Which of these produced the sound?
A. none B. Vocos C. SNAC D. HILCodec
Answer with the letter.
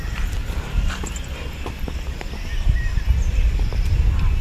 A